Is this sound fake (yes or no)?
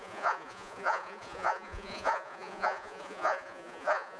yes